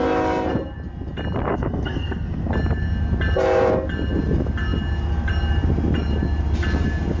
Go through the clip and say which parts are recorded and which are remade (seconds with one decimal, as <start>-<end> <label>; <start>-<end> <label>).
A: 0.0-1.5 recorded; 1.5-2.5 remade; 2.5-7.2 recorded